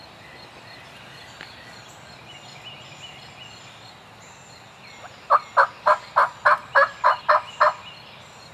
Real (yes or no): yes